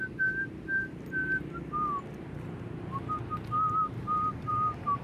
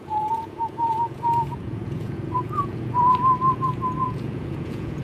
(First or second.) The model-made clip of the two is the second